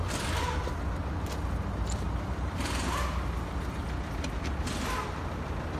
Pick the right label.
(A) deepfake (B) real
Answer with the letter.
B